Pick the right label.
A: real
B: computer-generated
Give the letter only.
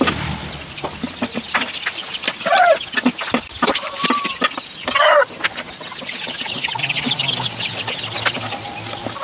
A